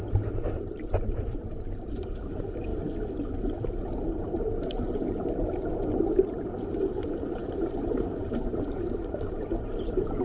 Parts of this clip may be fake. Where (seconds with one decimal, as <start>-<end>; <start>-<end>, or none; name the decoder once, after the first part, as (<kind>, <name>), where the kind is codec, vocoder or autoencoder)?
0.0-2.7 (vocoder, BigVGAN v2); 4.2-10.2

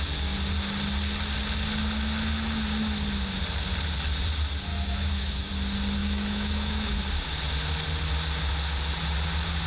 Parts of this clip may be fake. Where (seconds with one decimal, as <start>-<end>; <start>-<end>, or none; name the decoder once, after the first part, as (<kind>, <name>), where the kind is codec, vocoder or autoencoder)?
4.7-5.5 (autoencoder, DAC-VAE); 6.0-7.0

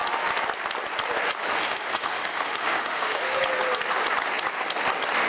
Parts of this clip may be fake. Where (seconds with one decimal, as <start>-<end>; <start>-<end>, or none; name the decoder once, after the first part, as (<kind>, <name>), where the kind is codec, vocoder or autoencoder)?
1.5-3.4 (autoencoder, DAC-VAE)

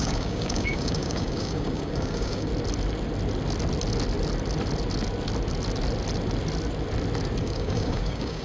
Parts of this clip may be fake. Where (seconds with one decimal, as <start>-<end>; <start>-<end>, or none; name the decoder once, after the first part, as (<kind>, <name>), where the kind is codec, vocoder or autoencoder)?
0.0-2.5 (codec, DAC); 7.4-8.4

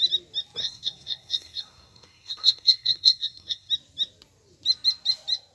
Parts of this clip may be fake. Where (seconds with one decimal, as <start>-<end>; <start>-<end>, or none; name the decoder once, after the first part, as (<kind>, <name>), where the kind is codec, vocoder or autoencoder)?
0.6-3.7 (codec, SNAC)